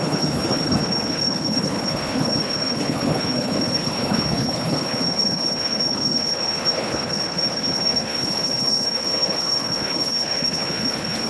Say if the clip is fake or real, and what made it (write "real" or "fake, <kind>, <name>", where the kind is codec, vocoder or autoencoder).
fake, codec, HILCodec